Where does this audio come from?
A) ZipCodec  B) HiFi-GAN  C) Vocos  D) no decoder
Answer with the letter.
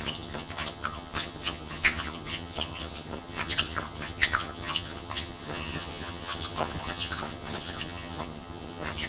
B